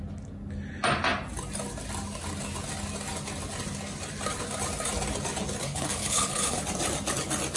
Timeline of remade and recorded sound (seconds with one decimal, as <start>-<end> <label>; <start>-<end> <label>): 0.0-5.6 recorded; 5.6-6.6 remade; 6.6-7.6 recorded